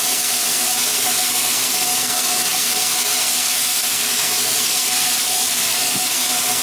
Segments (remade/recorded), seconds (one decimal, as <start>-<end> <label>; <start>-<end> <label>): 0.0-6.6 remade